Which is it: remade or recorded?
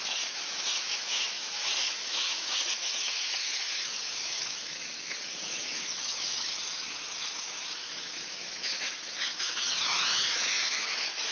remade